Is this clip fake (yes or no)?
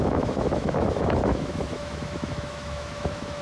yes